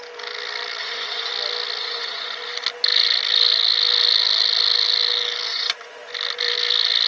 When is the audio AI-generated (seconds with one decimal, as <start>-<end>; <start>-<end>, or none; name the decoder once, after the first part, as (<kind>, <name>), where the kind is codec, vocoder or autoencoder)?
0.8-1.3 (vocoder, Vocos); 1.8-2.3; 5.5-6.0